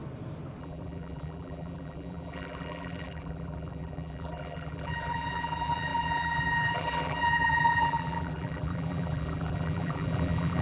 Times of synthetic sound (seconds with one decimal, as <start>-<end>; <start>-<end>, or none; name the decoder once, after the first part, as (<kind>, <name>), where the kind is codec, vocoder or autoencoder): 0.6-10.6 (vocoder, BigVGAN v2)